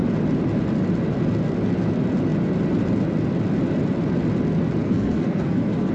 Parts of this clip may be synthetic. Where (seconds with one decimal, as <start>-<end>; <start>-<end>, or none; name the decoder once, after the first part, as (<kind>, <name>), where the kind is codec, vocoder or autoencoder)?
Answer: 4.8-5.9 (codec, SNAC)